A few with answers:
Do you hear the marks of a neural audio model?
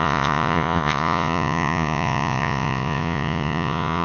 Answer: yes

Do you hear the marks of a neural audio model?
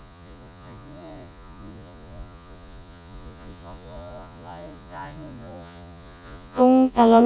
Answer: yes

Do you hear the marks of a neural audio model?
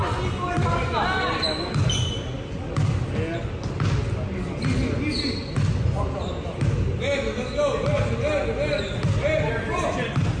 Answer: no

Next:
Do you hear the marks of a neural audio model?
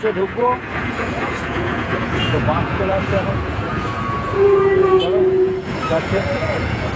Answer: yes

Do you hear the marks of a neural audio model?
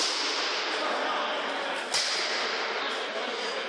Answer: no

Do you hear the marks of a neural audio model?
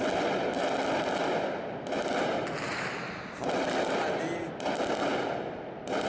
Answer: no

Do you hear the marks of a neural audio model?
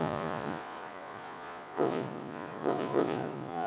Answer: yes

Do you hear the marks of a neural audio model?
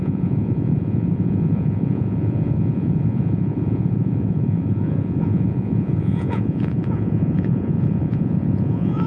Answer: yes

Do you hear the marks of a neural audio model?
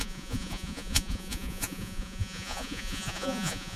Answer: yes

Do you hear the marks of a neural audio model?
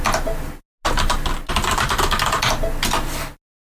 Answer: no